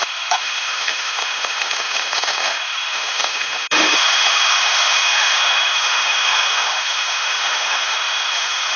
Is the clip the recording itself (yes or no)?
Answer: no